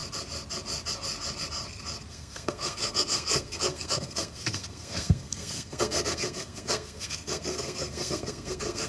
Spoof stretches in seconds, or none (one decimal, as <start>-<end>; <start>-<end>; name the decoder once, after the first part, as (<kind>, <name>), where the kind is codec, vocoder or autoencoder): 2.1-8.9 (codec, SNAC)